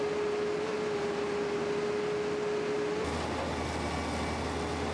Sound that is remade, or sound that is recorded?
recorded